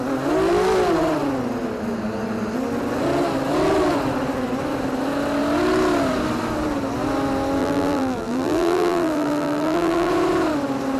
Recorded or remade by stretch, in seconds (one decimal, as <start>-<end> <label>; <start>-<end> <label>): 0.0-7.6 recorded; 7.6-10.1 remade; 10.1-11.0 recorded